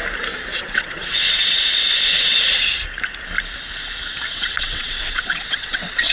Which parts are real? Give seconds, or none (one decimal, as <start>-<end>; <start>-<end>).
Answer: 0.0-0.6; 2.3-4.3